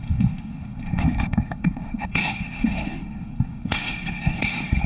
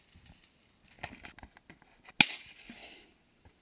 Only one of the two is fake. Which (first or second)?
first